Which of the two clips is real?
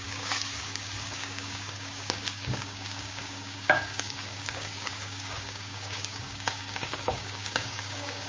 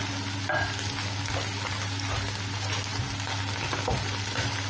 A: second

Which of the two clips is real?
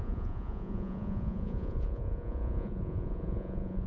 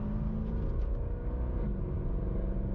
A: second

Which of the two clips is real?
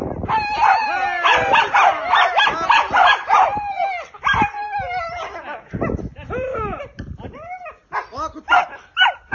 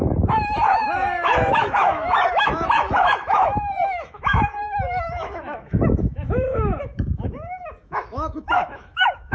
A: first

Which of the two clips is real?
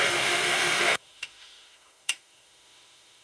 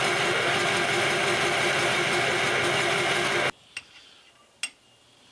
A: second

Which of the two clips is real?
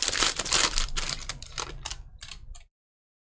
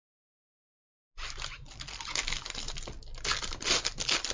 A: second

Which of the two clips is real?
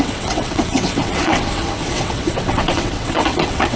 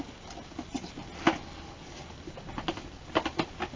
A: second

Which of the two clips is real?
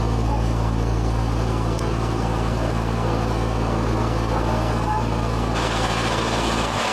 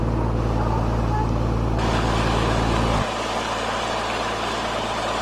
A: second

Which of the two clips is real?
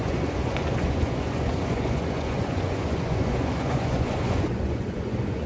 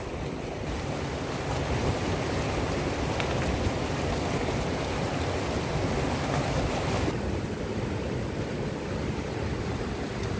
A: second